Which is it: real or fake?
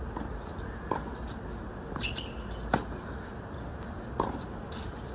real